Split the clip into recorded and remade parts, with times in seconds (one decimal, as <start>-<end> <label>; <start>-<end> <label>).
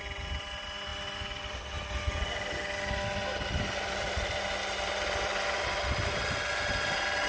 0.0-7.3 recorded